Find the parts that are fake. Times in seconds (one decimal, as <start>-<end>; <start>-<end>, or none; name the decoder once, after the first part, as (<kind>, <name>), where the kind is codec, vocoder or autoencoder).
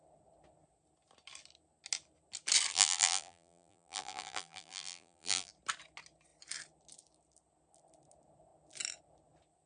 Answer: 2.7-5.5 (vocoder, BigVGAN v2)